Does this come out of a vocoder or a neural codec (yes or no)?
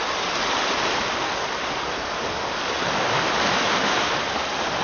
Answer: no